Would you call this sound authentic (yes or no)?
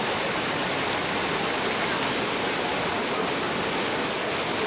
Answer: yes